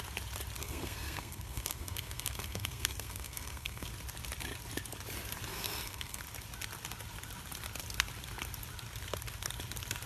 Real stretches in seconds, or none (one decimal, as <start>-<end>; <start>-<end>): 0.0-0.6; 3.9-5.5; 6.2-10.1